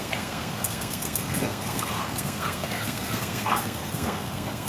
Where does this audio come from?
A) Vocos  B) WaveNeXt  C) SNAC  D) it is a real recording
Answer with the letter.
C